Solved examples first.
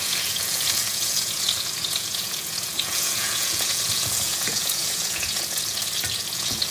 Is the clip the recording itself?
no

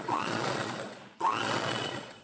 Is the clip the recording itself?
no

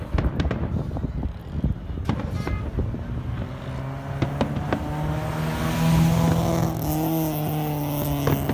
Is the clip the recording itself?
yes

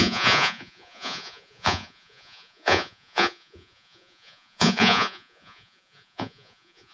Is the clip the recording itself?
no